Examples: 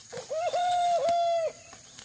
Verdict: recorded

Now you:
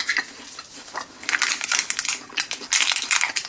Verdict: recorded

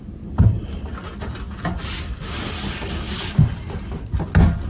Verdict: recorded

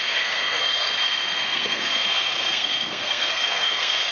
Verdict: remade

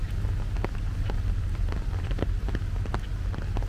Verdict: recorded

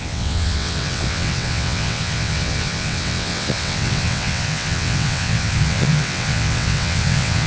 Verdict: remade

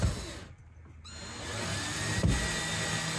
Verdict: recorded